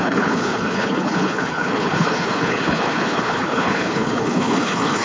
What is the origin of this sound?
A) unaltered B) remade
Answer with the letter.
B